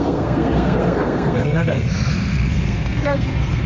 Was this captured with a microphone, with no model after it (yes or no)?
no